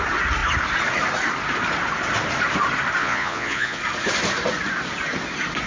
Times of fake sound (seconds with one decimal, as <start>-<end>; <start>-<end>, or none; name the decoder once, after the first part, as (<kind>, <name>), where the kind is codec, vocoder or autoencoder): 3.0-3.8 (vocoder, Vocos)